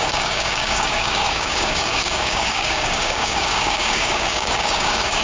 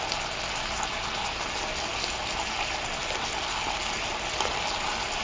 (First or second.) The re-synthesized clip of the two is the first